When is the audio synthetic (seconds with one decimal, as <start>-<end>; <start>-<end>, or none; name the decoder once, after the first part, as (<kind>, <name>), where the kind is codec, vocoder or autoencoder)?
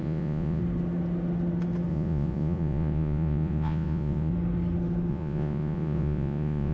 0.0-0.6 (vocoder, Vocos); 1.9-4.3; 5.1-6.7